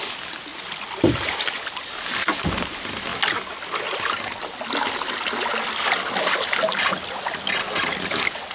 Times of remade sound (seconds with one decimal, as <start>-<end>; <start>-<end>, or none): none